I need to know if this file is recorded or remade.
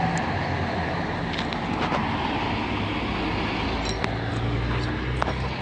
recorded